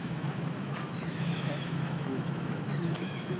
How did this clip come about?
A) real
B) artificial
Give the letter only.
B